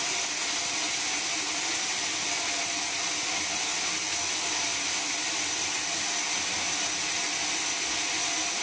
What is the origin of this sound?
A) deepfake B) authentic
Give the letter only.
B